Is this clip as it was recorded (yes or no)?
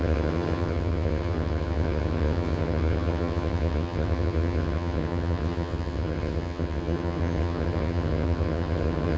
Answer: no